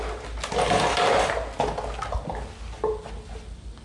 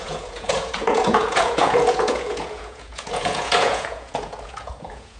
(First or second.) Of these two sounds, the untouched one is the first